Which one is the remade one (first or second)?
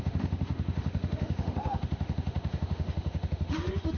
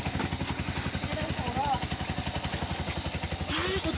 first